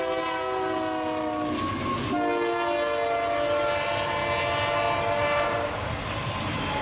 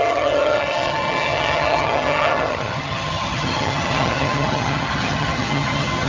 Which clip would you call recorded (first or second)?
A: first